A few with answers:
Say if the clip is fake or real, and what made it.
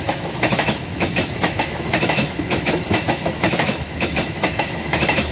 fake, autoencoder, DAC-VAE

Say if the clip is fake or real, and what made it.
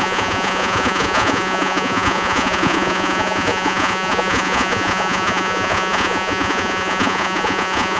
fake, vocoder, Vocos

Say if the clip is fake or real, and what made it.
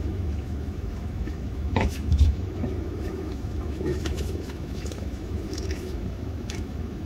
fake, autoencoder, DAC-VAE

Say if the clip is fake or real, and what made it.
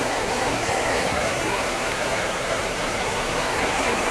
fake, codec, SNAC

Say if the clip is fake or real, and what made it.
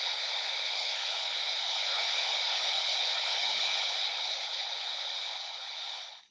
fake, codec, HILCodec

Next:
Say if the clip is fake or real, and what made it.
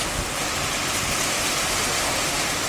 real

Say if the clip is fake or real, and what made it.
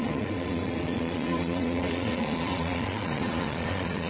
fake, vocoder, Vocos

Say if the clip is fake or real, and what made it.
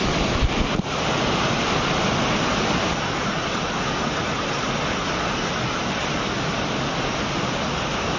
real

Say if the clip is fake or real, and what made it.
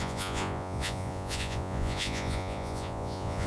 fake, vocoder, Vocos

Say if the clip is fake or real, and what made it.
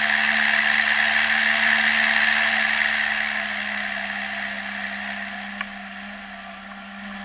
real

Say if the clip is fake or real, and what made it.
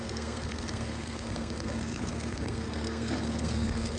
fake, codec, SNAC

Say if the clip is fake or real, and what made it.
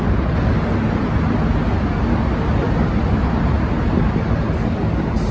real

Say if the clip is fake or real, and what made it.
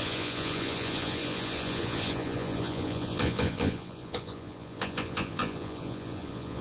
fake, vocoder, Vocos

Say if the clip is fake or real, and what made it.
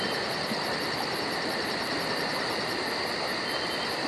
real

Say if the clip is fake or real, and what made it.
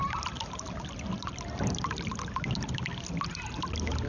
real